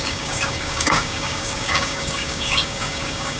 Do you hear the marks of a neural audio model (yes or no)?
yes